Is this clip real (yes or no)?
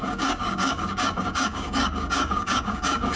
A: no